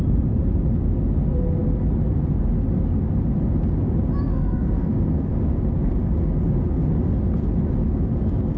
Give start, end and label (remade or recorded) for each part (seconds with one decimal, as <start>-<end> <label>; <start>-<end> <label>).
0.0-4.3 recorded; 4.3-5.3 remade; 5.3-8.6 recorded